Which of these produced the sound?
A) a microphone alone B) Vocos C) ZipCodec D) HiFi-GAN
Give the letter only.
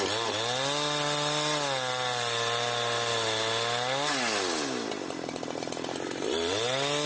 A